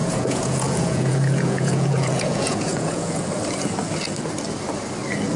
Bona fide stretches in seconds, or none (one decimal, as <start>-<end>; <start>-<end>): 3.2-5.4